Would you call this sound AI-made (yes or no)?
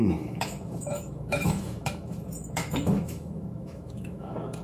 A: yes